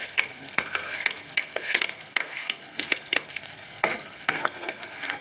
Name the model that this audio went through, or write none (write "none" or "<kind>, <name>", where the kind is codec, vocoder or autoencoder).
codec, SNAC